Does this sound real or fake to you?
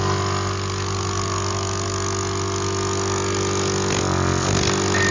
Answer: real